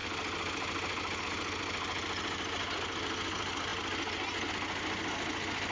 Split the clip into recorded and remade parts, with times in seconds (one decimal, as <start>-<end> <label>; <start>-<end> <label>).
0.0-5.7 recorded